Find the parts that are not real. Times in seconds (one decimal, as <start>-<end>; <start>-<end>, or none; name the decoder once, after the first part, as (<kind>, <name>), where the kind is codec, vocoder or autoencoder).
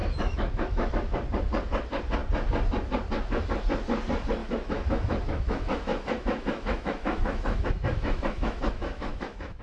0.0-0.9 (autoencoder, DAC-VAE); 4.4-9.6